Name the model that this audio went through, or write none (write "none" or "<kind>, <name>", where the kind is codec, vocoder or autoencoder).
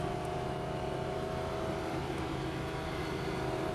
none